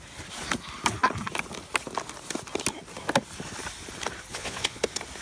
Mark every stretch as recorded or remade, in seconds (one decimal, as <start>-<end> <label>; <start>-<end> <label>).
0.0-4.3 recorded; 4.3-4.8 remade; 4.8-5.2 recorded